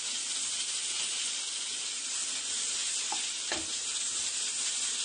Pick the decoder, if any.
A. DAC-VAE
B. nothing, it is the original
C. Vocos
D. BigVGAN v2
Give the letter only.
B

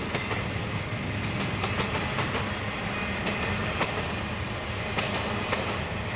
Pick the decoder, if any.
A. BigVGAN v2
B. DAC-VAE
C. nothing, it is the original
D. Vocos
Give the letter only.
C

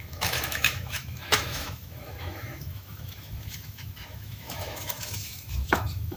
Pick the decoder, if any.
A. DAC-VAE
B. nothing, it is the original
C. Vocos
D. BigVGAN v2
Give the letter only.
A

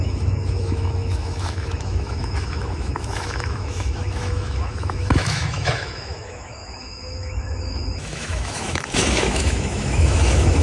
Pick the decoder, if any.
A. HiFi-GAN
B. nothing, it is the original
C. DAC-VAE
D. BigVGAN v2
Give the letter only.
C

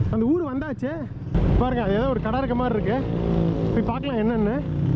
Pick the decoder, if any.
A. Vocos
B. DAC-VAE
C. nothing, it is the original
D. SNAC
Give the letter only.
C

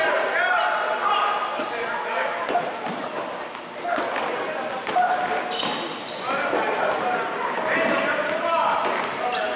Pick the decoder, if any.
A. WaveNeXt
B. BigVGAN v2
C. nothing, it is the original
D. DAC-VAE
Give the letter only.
C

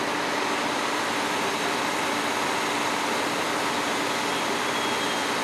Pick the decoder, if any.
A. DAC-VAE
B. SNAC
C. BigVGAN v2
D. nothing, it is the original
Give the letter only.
D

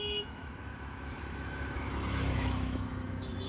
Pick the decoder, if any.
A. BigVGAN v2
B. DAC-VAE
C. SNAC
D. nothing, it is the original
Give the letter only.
B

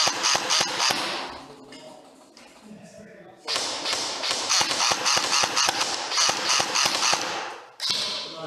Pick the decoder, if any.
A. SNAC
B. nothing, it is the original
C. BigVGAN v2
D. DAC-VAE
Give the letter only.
B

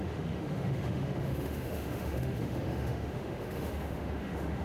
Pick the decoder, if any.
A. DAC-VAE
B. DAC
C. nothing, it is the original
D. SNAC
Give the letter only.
A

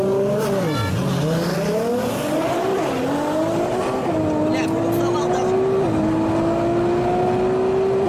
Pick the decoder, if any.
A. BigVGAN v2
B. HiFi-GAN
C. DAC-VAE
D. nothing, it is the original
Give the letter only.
D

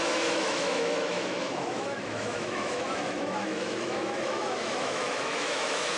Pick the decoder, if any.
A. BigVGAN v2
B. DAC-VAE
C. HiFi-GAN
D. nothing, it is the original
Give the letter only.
B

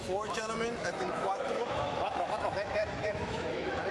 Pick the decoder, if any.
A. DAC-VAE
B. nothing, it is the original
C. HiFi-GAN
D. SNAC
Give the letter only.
A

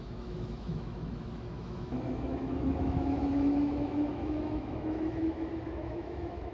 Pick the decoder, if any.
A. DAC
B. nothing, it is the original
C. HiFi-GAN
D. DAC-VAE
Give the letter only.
D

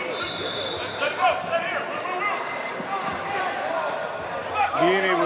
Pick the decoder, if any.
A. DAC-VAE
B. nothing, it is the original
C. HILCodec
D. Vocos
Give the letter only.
B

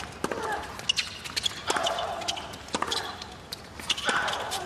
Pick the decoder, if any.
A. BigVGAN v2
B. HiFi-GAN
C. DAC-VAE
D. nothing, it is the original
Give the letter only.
D